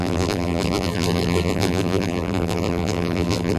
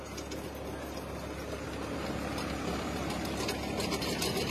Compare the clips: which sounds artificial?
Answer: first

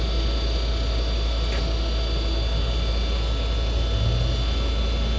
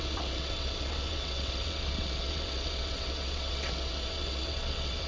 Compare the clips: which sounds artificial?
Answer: second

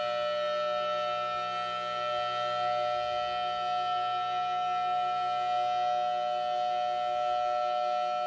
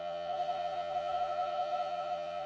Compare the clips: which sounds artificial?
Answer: second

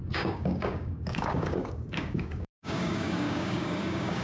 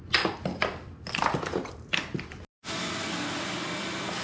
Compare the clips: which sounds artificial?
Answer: first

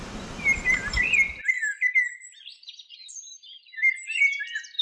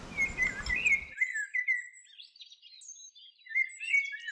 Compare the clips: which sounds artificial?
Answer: first